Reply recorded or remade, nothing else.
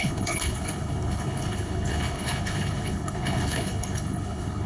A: remade